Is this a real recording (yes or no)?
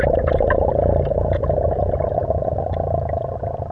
yes